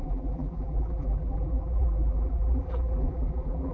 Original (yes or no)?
no